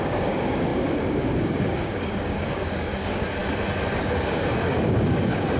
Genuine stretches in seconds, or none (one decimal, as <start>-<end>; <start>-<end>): 3.4-4.0